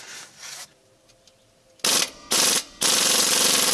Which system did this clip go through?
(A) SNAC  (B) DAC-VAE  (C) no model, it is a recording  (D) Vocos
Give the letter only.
C